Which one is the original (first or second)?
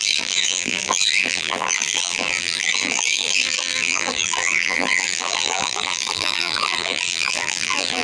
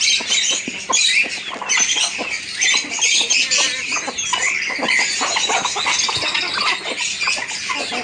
second